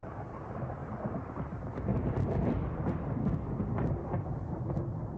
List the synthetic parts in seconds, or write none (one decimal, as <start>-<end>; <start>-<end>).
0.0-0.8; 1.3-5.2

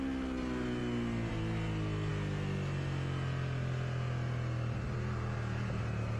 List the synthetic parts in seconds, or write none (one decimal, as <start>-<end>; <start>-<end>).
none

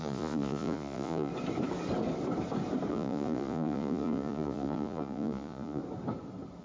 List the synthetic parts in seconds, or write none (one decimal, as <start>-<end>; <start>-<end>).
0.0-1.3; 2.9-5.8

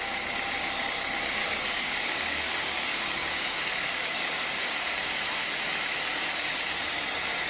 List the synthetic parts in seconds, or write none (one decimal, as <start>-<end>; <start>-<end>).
1.4-5.1

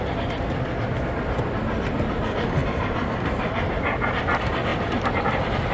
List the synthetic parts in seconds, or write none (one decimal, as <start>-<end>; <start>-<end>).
2.6-4.2; 4.7-5.3

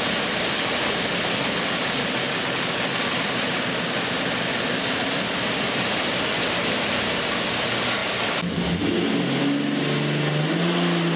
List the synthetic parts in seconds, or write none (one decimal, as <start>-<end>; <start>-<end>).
none

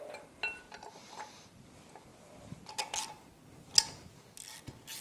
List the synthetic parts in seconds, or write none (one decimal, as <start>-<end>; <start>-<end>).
none